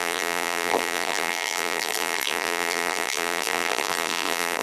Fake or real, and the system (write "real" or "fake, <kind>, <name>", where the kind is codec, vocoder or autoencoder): fake, vocoder, BigVGAN v2